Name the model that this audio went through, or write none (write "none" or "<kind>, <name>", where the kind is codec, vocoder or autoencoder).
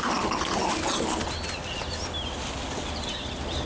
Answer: none